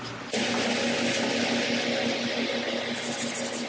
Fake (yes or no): no